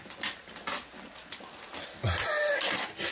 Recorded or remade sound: recorded